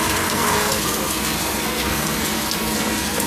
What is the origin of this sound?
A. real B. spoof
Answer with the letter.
B